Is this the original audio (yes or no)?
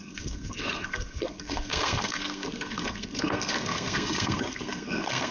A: no